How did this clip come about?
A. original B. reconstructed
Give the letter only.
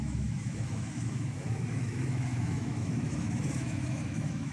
B